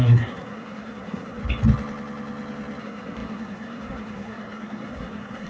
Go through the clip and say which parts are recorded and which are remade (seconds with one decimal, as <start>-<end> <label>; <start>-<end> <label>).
0.0-1.4 remade; 1.4-2.8 recorded; 2.8-5.5 remade